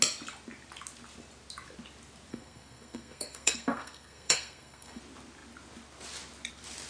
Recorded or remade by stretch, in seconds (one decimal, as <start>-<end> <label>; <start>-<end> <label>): 0.0-2.3 recorded; 2.3-5.0 remade; 5.0-6.9 recorded